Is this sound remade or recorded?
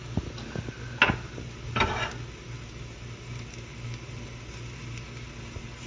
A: recorded